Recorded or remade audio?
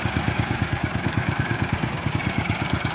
remade